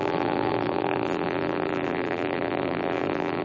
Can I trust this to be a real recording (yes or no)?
no